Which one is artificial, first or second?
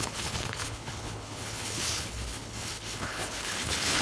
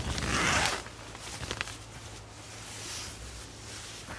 first